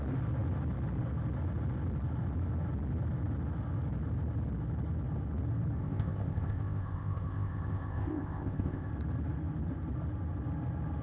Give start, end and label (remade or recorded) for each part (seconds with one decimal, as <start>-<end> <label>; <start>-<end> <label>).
0.0-5.8 recorded; 5.8-8.9 remade; 8.9-11.0 recorded